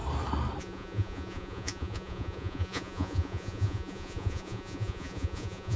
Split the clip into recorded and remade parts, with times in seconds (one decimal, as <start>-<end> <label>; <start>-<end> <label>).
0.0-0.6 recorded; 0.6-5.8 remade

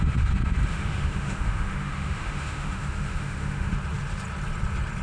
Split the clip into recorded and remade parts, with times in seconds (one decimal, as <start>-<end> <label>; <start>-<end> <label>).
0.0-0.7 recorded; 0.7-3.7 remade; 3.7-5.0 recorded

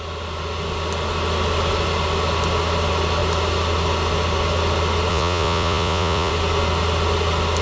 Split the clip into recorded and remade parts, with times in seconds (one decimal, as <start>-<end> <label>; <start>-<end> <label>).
0.0-5.1 recorded; 5.1-6.3 remade; 6.3-7.6 recorded

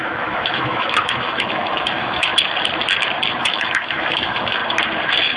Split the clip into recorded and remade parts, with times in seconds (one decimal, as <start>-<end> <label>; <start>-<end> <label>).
0.0-2.3 remade; 2.3-3.4 recorded; 3.4-4.6 remade; 4.6-5.4 recorded